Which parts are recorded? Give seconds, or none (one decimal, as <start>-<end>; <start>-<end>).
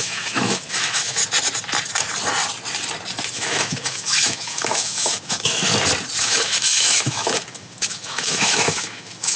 1.2-3.3; 5.7-6.2